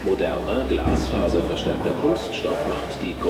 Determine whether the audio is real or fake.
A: fake